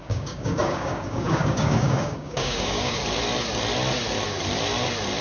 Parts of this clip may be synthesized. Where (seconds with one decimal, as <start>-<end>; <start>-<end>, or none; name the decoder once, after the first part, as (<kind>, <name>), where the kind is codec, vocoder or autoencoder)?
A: 0.0-3.0 (codec, DAC)